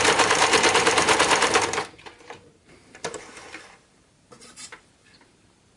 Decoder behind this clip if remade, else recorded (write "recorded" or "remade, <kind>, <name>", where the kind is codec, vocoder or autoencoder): remade, vocoder, BigVGAN v2